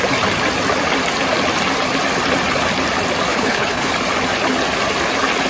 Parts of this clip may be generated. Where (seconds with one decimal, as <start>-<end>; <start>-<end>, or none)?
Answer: 3.3-3.9